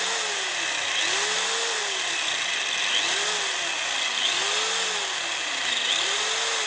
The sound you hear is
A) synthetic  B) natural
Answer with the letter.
B